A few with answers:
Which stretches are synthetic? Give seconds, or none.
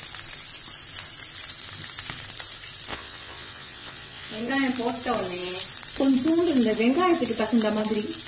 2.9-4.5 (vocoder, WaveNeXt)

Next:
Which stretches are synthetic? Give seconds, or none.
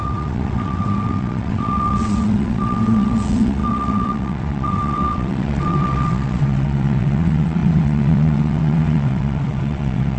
0.0-10.2 (vocoder, WaveNeXt)